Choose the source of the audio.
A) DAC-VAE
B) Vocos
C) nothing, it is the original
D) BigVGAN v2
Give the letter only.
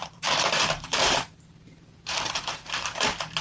D